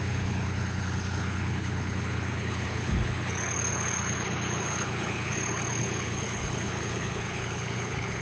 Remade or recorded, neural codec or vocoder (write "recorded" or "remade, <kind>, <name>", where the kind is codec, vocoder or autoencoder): remade, codec, HILCodec